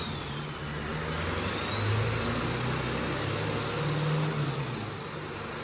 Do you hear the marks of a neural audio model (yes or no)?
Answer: no